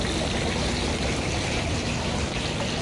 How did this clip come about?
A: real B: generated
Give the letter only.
A